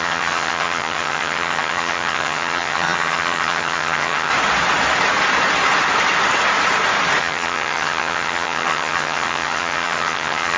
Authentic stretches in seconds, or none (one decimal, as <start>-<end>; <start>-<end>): 4.3-7.2